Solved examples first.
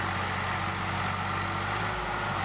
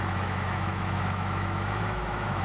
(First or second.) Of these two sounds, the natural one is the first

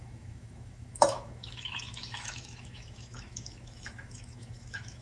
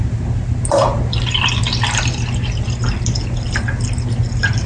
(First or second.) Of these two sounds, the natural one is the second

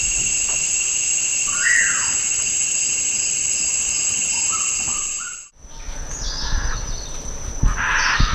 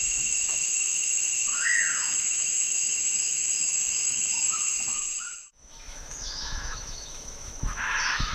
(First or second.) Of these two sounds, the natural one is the first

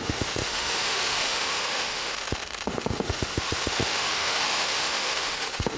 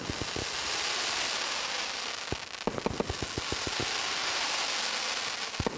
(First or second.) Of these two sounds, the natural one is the second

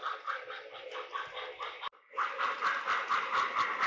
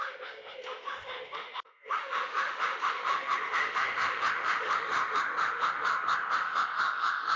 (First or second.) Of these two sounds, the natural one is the first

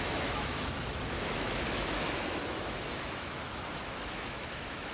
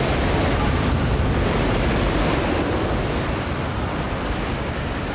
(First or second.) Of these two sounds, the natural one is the second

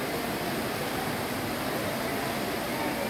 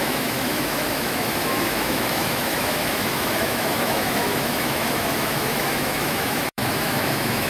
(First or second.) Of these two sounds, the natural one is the first